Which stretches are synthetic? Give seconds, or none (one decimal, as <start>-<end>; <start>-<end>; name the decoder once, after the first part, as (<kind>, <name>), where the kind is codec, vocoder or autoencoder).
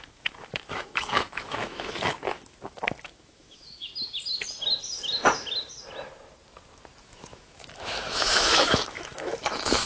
0.0-3.9 (autoencoder, DAC-VAE); 7.0-9.9